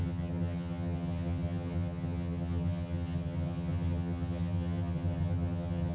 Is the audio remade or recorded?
remade